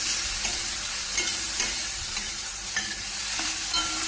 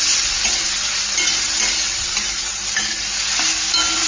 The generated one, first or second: first